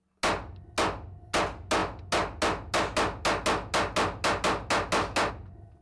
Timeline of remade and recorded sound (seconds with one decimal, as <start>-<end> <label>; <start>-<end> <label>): 0.0-5.8 recorded